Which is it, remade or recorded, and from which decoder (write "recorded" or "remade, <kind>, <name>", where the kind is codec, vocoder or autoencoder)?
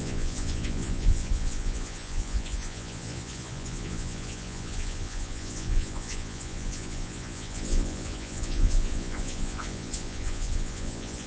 remade, vocoder, Vocos